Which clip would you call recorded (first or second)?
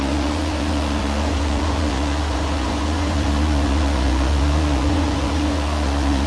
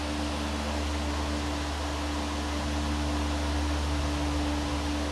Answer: second